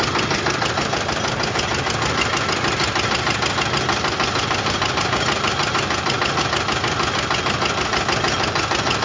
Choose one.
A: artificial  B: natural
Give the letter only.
B